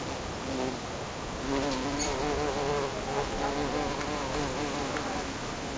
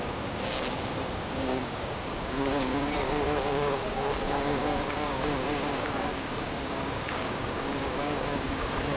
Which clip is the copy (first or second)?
second